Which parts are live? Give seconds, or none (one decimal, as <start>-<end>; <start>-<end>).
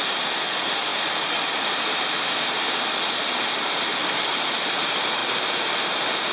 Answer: 0.0-6.3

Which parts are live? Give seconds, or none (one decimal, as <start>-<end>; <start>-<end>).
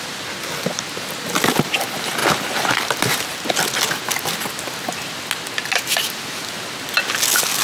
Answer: 0.0-7.6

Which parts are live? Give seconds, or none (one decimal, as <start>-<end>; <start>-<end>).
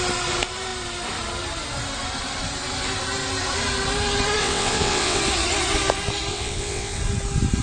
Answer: 0.0-4.4; 5.2-6.3; 7.0-7.6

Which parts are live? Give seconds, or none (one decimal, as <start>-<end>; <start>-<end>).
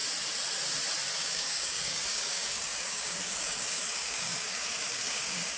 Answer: 0.0-1.2